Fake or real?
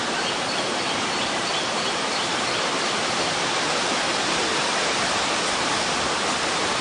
fake